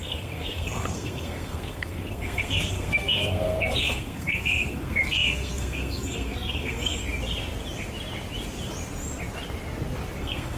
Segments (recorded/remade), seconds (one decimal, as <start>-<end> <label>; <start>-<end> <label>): 0.0-7.0 remade; 7.0-10.2 recorded; 10.2-10.6 remade